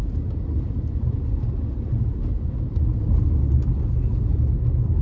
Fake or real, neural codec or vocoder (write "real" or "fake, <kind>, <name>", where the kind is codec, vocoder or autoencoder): real